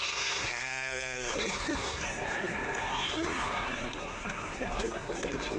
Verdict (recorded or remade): remade